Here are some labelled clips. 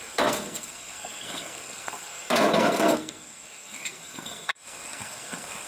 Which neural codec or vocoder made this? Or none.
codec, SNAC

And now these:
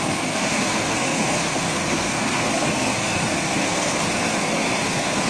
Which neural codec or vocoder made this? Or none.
codec, SNAC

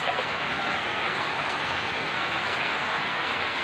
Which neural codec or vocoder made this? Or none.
codec, SNAC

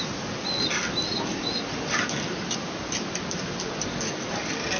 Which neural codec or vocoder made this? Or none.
none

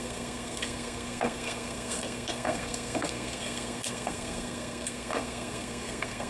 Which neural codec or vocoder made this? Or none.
codec, SNAC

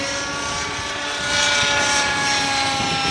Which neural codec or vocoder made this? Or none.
none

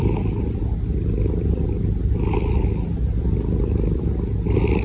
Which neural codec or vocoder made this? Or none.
none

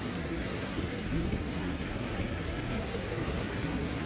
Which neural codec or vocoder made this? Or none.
codec, SNAC